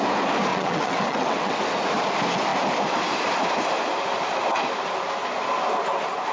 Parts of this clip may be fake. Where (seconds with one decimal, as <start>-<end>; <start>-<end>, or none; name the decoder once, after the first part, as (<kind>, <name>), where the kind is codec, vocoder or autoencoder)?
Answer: 0.5-1.6 (vocoder, WaveNeXt)